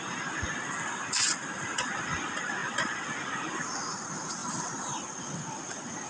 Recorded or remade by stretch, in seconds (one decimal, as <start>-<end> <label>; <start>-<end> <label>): 0.0-6.1 recorded